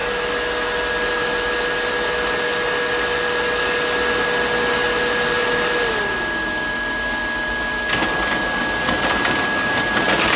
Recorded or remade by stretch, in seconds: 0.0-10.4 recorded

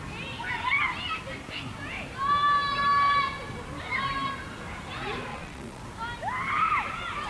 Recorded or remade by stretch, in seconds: 0.0-5.3 recorded; 5.3-5.8 remade; 5.8-7.3 recorded